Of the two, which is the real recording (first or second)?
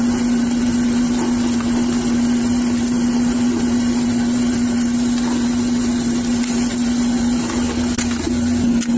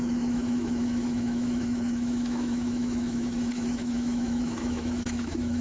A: first